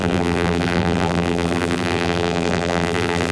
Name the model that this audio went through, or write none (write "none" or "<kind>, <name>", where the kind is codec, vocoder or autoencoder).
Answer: vocoder, BigVGAN v2